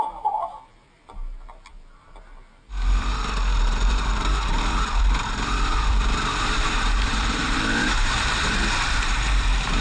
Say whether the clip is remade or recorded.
remade